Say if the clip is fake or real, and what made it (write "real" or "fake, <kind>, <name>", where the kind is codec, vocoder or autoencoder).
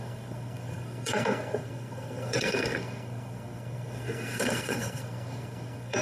fake, codec, SNAC